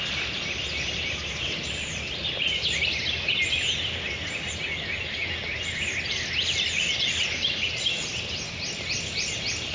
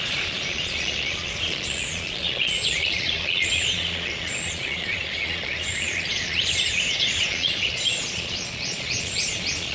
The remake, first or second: second